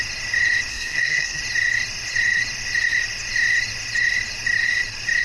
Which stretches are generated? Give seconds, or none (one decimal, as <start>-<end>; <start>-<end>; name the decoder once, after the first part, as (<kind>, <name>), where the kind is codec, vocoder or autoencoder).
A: 0.7-1.4 (codec, SNAC)